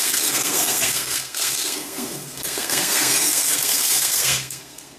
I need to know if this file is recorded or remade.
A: remade